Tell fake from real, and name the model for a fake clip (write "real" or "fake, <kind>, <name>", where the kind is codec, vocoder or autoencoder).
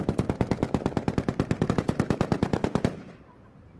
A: fake, vocoder, BigVGAN v2